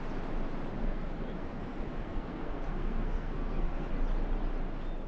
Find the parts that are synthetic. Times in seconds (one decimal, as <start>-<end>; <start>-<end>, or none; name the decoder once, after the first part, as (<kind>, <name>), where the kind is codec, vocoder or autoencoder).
0.8-3.9 (codec, SNAC)